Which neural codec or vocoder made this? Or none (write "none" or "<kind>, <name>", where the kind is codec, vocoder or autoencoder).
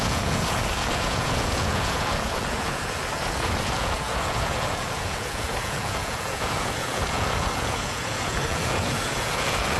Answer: vocoder, Vocos